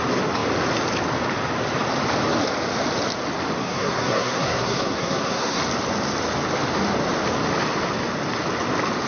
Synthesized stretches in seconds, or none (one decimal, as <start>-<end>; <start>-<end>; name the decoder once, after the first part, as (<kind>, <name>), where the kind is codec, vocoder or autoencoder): 3.6-5.6 (codec, SNAC)